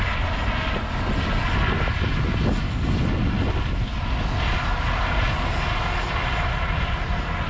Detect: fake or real real